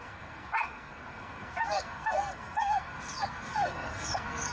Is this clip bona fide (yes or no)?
no